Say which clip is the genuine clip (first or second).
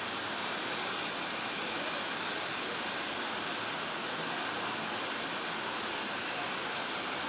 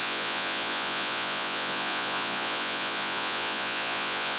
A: first